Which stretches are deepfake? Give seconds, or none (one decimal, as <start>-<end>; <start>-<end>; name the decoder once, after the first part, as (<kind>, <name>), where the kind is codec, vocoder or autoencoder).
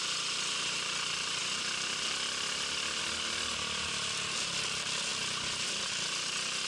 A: none